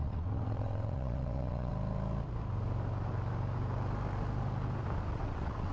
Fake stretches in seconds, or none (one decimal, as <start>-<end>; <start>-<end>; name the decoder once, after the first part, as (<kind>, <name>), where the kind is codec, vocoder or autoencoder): 0.0-1.7 (vocoder, WaveNeXt); 5.1-5.7

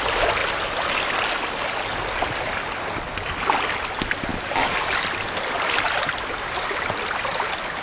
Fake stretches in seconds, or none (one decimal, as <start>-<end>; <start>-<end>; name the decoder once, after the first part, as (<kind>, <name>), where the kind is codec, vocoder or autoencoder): none

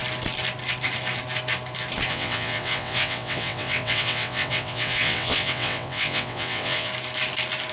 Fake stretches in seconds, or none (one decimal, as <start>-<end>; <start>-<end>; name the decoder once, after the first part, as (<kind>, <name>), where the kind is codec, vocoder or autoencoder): 2.1-6.9 (vocoder, WaveNeXt)

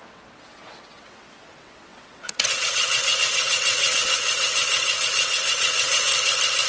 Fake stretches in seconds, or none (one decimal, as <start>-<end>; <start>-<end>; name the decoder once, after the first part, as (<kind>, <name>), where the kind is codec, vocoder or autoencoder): 0.0-6.1 (vocoder, WaveNeXt)

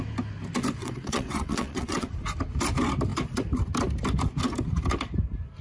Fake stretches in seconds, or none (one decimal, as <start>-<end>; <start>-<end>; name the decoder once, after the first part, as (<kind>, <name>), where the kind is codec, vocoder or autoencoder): 0.8-2.1 (vocoder, WaveNeXt)

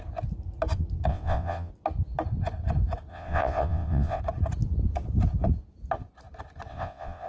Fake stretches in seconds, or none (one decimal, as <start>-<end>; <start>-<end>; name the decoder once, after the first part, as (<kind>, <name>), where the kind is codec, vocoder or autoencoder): 1.1-1.7 (vocoder, WaveNeXt); 3.1-4.2; 6.7-7.3

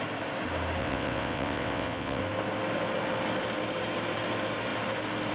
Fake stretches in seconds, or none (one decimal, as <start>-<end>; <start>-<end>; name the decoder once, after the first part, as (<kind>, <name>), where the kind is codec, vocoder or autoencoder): 0.8-2.2 (vocoder, WaveNeXt)